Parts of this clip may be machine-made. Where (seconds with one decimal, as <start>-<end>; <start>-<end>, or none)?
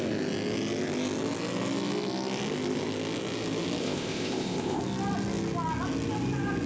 3.8-4.8